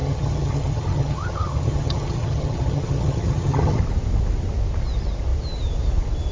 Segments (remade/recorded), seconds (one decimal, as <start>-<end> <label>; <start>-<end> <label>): 0.0-3.8 remade; 3.8-6.3 recorded